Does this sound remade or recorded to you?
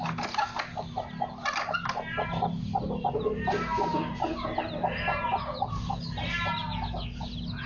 recorded